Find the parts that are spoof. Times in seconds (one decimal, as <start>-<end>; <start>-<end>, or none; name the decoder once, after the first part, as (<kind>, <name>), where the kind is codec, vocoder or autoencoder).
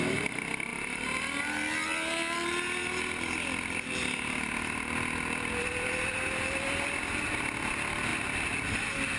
none